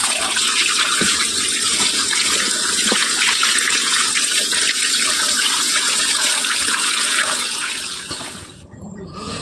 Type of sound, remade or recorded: remade